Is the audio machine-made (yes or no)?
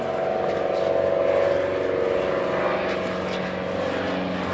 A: no